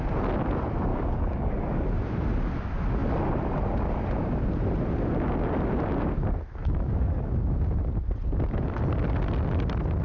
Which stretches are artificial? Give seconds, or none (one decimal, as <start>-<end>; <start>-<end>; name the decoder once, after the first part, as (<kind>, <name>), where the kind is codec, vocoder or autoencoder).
0.9-1.9 (codec, DAC); 6.6-7.3